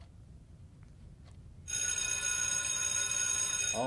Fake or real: real